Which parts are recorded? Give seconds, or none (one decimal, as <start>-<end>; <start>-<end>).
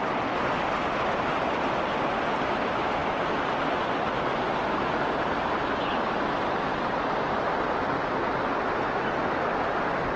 0.0-10.2